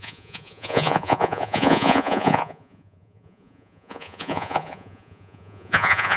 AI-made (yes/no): yes